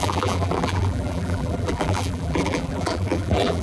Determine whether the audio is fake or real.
fake